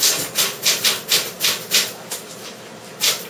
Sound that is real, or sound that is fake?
fake